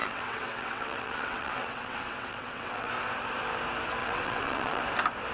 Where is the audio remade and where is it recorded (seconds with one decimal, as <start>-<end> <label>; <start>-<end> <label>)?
0.0-2.9 remade; 2.9-4.0 recorded; 4.0-4.8 remade; 4.8-5.3 recorded